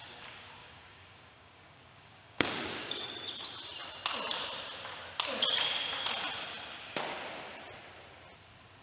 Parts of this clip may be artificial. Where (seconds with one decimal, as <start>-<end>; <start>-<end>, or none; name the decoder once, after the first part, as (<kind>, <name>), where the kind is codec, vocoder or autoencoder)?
0.6-3.1 (codec, DAC)